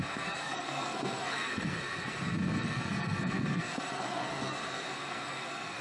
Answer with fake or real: fake